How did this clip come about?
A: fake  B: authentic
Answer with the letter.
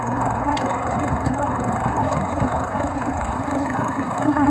A